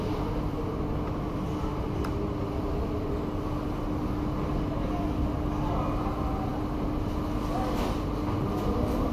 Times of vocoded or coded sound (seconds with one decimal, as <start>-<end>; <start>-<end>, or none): none